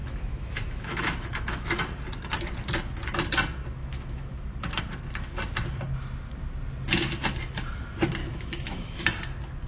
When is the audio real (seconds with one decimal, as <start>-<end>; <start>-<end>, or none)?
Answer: 1.7-3.8; 4.8-8.2; 9.0-9.7